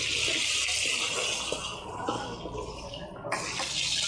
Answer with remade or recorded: recorded